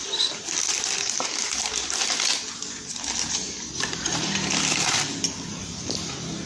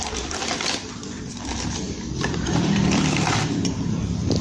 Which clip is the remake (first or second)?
second